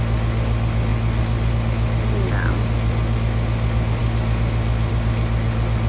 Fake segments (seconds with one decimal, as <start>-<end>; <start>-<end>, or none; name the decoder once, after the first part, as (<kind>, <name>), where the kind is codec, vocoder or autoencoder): none